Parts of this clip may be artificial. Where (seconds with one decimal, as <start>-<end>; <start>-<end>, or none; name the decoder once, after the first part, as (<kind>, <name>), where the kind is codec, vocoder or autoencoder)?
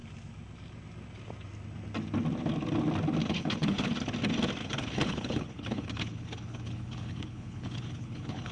3.2-3.9 (codec, HILCodec); 4.6-8.5